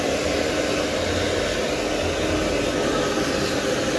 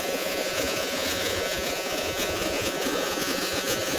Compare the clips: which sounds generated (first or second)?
second